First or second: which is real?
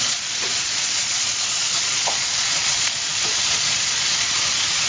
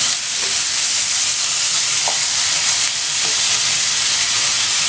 second